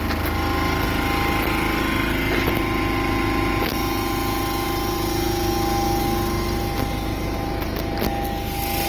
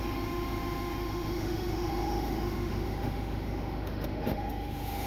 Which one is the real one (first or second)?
first